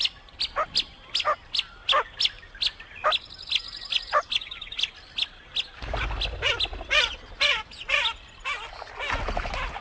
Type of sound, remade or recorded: recorded